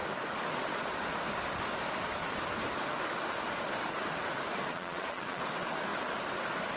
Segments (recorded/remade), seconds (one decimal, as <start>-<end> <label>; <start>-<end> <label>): 0.0-4.7 recorded; 4.7-5.4 remade; 5.4-6.8 recorded